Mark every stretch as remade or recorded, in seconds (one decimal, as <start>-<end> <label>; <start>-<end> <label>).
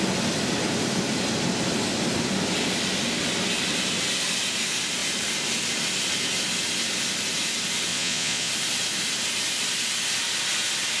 0.0-7.9 recorded; 7.9-8.5 remade; 8.5-11.0 recorded